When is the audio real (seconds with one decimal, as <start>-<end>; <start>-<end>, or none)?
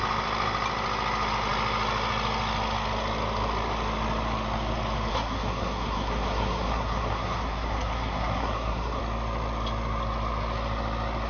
0.0-5.1; 9.0-11.3